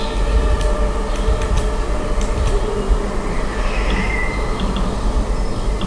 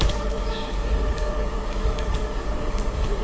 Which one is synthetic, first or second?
second